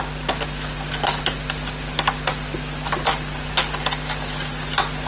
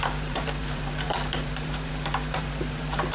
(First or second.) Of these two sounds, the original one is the first